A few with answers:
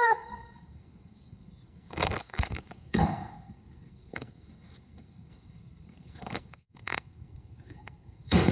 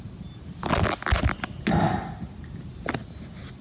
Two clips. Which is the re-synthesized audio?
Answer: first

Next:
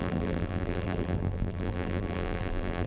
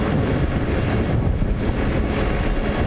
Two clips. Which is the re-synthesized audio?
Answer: first